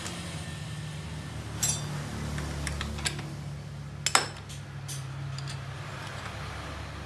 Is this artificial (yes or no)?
no